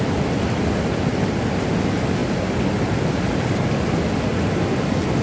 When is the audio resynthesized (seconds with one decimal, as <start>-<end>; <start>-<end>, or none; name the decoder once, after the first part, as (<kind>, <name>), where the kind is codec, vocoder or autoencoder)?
none